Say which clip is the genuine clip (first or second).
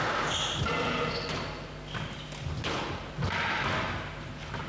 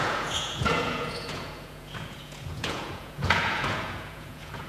first